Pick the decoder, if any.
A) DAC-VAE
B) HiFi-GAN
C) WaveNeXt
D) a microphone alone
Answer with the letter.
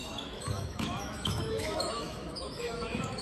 A